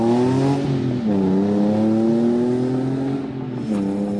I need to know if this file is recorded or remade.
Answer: recorded